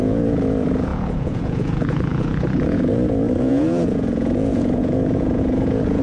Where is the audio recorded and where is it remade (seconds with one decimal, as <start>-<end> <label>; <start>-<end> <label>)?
0.0-6.0 remade